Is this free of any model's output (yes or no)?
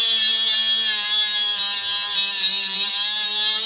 yes